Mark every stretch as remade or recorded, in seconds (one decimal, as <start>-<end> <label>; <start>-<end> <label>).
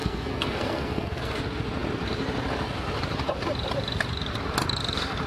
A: 0.0-1.4 remade; 1.4-5.3 recorded